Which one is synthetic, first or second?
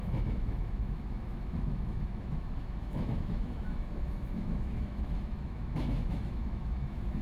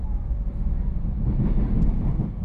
first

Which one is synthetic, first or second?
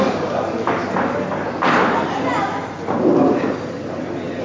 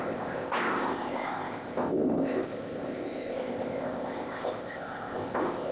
second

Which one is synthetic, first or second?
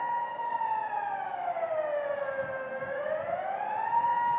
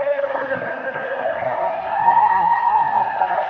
second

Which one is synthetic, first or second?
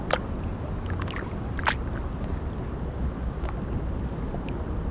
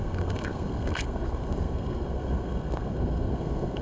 second